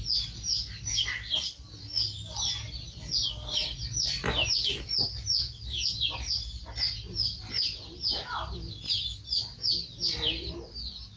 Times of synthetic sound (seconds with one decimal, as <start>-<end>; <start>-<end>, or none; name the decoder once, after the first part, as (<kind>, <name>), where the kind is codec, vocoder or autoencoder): none